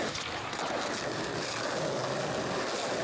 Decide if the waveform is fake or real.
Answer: real